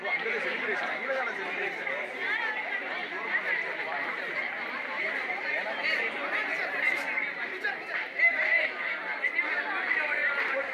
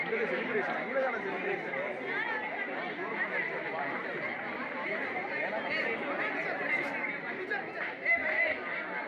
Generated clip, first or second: first